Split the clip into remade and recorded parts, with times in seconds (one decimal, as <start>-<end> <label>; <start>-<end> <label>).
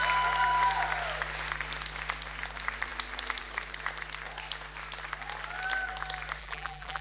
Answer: 0.0-6.4 recorded; 6.4-7.0 remade